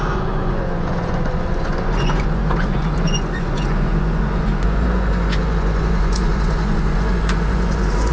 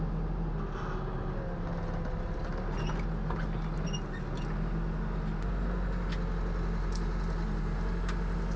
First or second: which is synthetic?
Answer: first